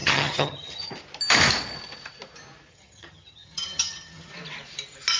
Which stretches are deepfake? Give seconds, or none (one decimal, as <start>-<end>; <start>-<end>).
0.0-0.9; 2.7-4.3